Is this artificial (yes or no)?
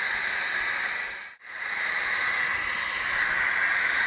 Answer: no